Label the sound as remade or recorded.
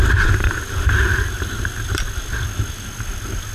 remade